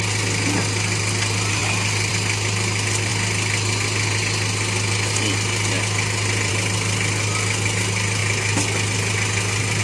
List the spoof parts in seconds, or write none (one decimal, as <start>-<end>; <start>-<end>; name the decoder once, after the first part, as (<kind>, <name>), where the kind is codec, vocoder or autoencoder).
none